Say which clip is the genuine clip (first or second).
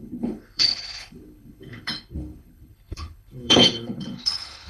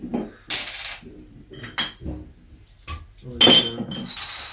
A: second